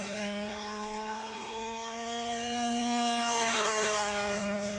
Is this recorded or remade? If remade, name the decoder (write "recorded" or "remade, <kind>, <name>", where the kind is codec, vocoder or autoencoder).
remade, codec, SNAC